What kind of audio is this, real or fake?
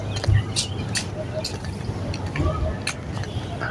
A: real